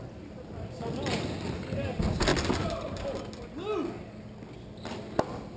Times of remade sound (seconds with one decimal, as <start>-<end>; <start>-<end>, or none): none